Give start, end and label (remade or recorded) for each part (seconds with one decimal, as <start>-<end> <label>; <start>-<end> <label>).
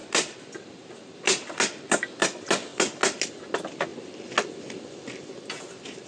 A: 0.0-6.1 recorded